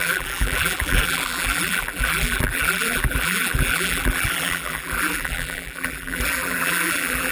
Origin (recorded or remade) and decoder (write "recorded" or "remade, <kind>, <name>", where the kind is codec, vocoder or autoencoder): remade, vocoder, BigVGAN v2